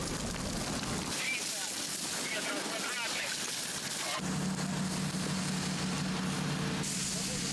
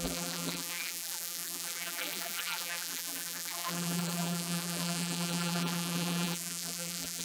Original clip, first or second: first